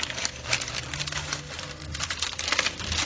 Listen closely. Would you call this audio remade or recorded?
recorded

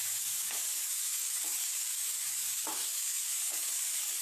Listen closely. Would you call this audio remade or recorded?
remade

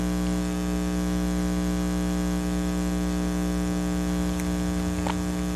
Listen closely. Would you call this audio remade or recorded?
recorded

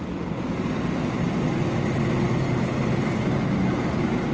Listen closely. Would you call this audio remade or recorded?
recorded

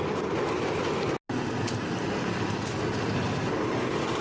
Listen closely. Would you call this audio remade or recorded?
recorded